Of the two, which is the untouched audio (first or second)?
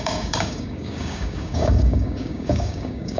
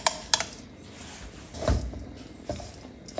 second